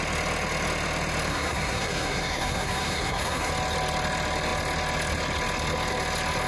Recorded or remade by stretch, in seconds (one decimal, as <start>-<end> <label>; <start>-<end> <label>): 0.0-1.3 recorded; 1.3-3.5 remade; 3.5-6.5 recorded